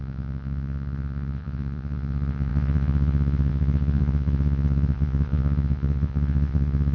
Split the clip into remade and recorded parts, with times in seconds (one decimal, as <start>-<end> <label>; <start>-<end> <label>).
0.0-6.9 remade